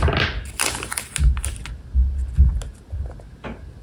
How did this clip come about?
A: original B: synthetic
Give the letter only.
A